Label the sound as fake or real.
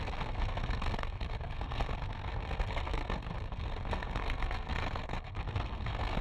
fake